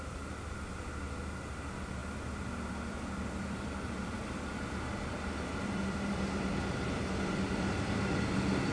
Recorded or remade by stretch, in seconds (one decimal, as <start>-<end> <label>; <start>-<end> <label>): 0.0-8.7 remade